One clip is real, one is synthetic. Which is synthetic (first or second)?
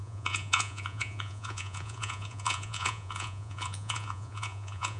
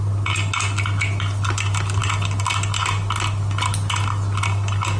first